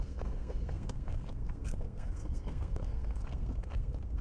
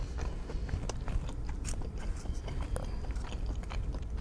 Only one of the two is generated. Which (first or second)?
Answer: first